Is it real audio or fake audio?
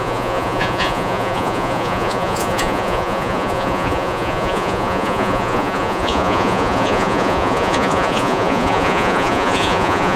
fake